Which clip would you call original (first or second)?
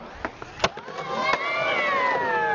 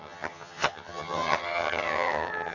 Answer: first